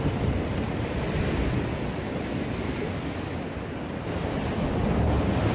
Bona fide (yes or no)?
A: yes